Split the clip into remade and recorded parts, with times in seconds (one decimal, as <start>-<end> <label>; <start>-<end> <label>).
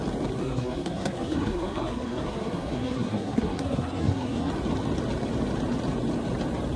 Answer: 0.0-0.4 recorded; 0.4-4.5 remade; 4.5-6.8 recorded